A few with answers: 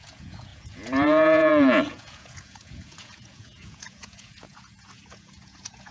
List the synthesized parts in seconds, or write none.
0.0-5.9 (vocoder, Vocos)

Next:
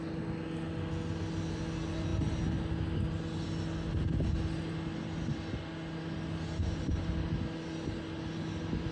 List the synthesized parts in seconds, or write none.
none

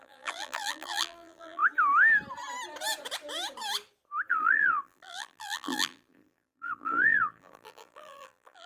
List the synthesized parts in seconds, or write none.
0.0-1.6 (vocoder, BigVGAN v2); 4.3-8.7

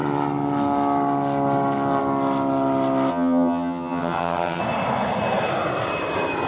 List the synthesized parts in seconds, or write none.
3.1-4.6 (vocoder, HiFi-GAN)

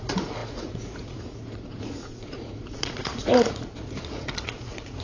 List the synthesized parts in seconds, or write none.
0.0-5.0 (vocoder, Vocos)